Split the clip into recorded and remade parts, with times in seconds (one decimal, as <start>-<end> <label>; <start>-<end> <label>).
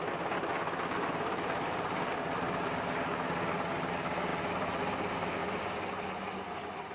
0.0-6.9 recorded